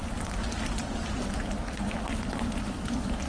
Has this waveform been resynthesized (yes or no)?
no